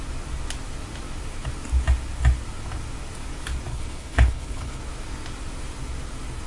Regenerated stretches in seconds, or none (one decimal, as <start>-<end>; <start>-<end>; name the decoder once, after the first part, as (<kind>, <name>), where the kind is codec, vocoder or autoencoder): 3.7-4.8 (codec, HILCodec)